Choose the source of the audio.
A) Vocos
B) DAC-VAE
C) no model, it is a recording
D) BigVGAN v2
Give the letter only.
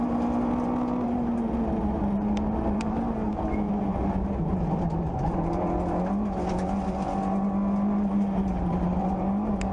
C